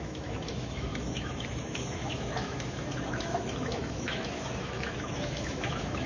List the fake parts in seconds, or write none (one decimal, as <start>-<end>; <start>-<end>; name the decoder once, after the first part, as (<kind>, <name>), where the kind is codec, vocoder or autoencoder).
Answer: 0.0-6.1 (autoencoder, DAC-VAE)